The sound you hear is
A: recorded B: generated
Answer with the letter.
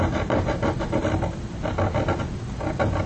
B